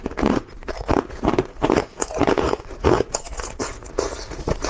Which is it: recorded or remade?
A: remade